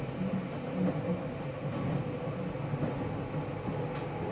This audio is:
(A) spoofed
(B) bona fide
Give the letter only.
B